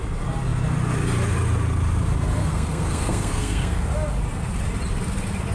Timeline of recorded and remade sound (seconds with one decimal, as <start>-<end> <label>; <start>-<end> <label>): 0.0-2.4 recorded; 2.4-3.9 remade; 3.9-5.5 recorded